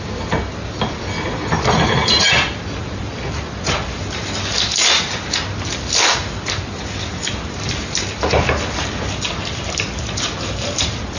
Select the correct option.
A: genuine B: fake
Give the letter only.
A